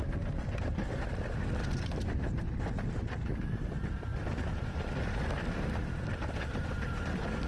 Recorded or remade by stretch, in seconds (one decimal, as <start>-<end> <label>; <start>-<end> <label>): 0.0-1.6 recorded; 1.6-3.6 remade; 3.6-7.5 recorded